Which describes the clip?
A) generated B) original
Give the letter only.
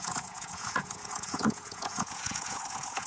A